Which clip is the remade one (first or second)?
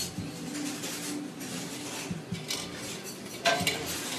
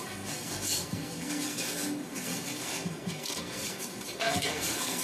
second